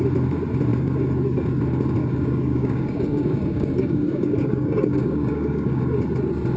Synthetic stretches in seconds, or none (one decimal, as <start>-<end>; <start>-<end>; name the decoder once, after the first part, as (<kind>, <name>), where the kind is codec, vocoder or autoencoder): 2.0-5.8 (codec, DAC)